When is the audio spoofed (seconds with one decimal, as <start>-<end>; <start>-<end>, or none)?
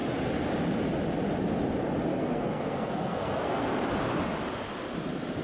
2.1-3.7